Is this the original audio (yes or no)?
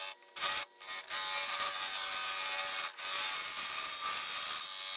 yes